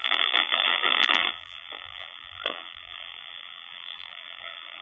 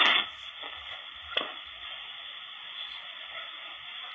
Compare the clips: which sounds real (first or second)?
second